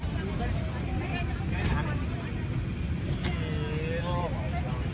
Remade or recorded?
recorded